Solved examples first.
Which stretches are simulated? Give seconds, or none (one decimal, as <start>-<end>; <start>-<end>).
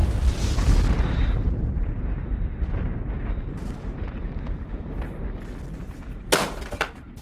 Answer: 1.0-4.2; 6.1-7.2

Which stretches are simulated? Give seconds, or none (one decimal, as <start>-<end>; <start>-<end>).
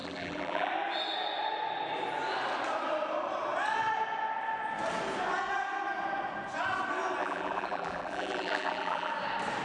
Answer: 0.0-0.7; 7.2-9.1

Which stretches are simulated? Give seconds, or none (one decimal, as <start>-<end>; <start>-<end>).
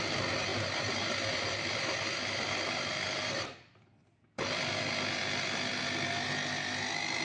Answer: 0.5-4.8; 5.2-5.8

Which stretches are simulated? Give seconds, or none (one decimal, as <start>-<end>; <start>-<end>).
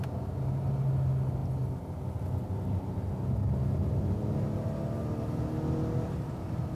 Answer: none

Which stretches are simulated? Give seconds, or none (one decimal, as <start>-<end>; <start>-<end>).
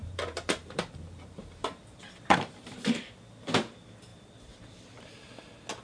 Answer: 0.0-3.1